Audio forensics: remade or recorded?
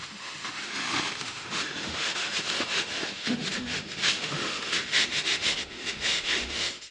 remade